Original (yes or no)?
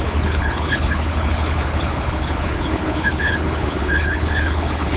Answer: no